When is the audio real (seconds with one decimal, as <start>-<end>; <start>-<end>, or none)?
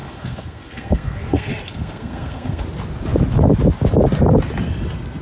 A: 2.6-5.2